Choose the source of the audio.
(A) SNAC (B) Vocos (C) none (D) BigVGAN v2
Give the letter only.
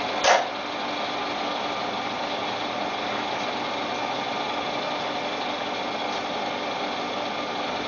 C